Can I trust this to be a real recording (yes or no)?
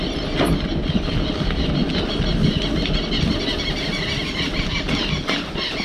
yes